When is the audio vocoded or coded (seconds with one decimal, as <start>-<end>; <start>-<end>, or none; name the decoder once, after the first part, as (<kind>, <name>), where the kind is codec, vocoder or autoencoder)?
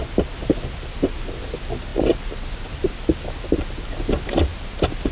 none